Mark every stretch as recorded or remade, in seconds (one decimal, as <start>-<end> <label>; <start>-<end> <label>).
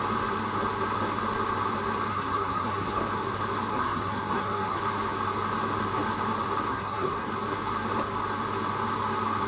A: 0.0-2.1 recorded; 2.1-3.0 remade; 3.0-3.7 recorded; 3.7-4.8 remade; 4.8-6.7 recorded; 6.7-7.3 remade; 7.3-9.5 recorded